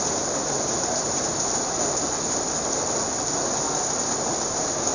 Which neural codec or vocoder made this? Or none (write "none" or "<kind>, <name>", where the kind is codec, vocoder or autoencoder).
none